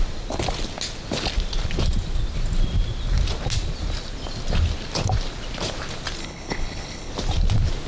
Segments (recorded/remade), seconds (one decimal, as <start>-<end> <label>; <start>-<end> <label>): 0.0-6.2 recorded; 6.2-7.1 remade; 7.1-7.9 recorded